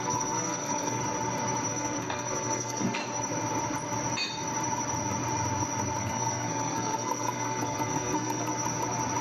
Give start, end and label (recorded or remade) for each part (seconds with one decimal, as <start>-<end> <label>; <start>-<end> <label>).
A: 0.0-1.0 remade; 1.0-1.7 recorded; 1.7-3.0 remade; 3.0-6.0 recorded; 6.0-8.5 remade; 8.5-9.2 recorded